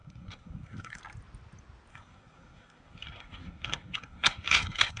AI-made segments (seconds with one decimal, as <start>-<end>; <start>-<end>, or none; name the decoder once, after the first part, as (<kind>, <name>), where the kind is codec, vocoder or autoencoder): 0.0-1.0 (codec, SNAC); 1.9-5.0